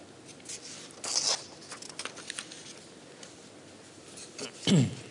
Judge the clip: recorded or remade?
recorded